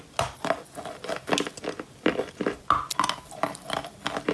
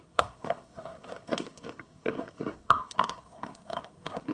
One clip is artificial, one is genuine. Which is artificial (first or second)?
second